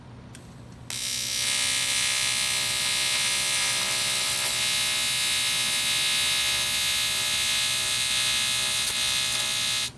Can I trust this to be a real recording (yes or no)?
yes